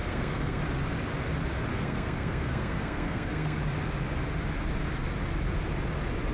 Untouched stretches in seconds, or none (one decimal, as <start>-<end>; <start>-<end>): 0.6-1.7; 3.6-6.3